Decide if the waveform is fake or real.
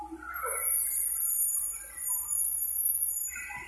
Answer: real